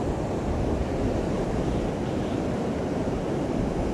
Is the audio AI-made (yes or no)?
no